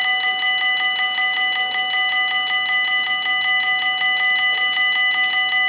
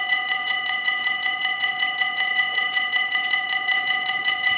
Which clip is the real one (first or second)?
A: first